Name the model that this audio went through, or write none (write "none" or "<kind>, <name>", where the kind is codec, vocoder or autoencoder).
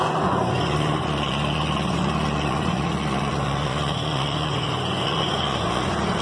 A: vocoder, Vocos